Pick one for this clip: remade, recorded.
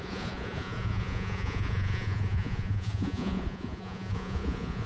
remade